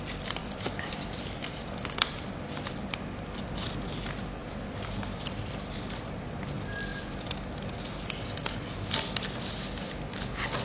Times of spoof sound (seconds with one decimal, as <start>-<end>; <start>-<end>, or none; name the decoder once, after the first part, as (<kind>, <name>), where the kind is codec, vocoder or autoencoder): 0.4-3.0 (vocoder, BigVGAN v2); 4.4-6.4; 6.9-7.7